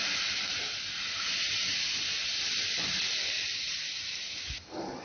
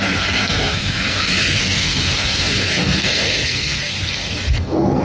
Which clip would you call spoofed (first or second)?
second